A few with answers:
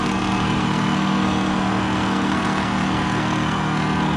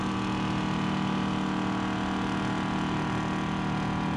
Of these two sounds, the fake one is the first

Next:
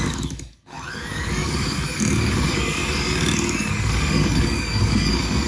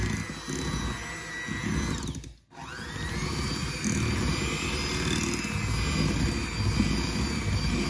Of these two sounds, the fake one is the first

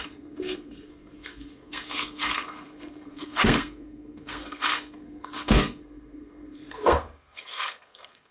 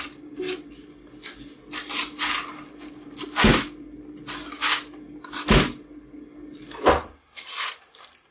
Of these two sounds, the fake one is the first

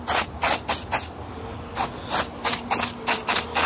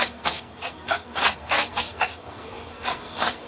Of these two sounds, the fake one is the second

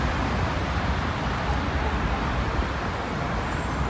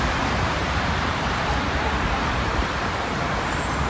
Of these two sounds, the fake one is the second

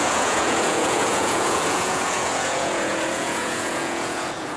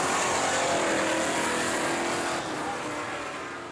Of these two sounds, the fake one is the first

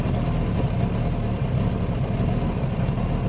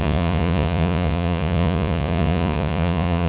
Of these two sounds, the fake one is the second